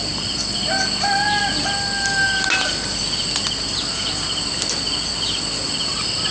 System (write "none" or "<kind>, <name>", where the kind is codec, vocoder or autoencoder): none